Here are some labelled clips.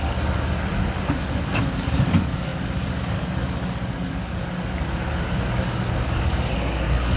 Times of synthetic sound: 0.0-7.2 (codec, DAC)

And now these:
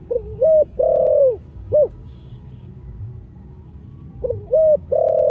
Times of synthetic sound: 0.0-3.1 (codec, DAC); 4.4-5.3

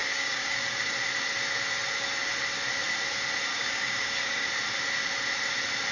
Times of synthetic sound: 0.0-0.9 (codec, DAC); 3.5-4.5

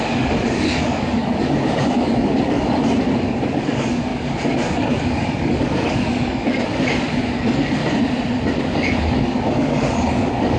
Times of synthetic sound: 0.0-7.8 (codec, DAC); 8.6-10.6

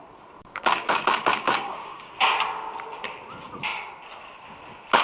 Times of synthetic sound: 0.4-2.1 (codec, DAC)